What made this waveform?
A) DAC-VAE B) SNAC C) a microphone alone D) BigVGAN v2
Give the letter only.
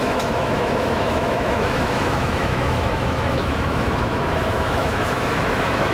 A